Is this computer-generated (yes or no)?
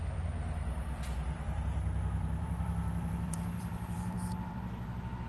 yes